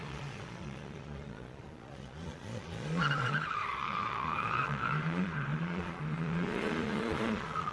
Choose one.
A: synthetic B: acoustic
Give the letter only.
A